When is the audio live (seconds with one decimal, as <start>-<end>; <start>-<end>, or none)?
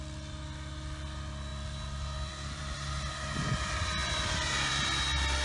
0.0-4.0; 4.7-5.4